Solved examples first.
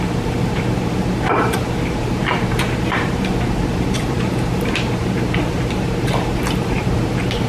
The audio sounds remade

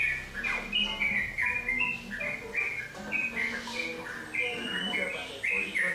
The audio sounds recorded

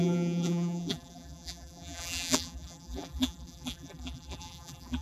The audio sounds remade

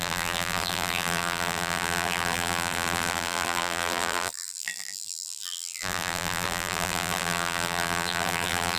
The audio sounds remade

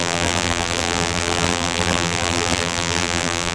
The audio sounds remade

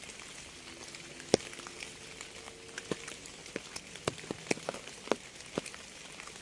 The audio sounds recorded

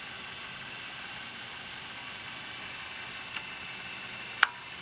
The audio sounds recorded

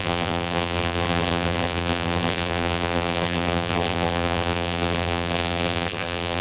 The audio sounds remade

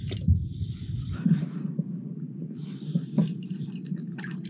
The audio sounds remade